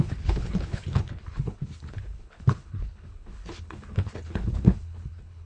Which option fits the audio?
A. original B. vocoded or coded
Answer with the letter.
B